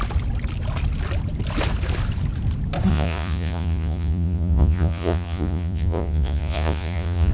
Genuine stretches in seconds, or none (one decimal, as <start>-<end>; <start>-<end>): 0.0-2.9